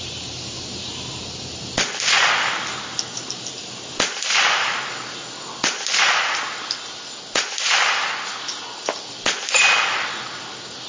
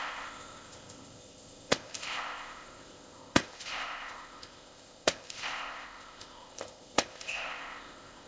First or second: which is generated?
second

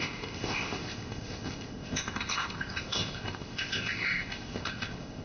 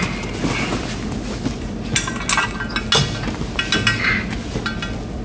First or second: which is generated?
first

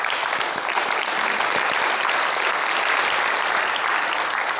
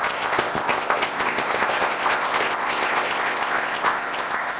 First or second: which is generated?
second